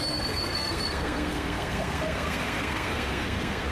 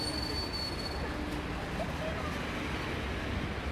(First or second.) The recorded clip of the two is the second